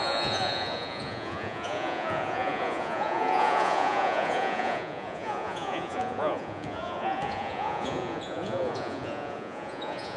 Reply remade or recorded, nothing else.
remade